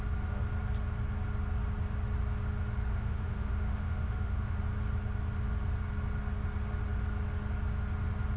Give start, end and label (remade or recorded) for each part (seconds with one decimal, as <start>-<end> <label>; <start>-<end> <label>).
0.0-2.9 recorded; 2.9-4.6 remade; 4.6-8.4 recorded